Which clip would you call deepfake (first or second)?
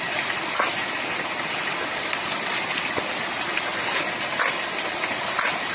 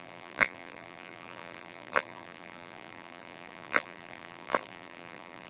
second